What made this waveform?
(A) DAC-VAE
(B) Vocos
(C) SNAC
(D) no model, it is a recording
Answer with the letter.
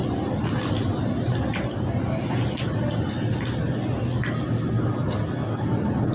D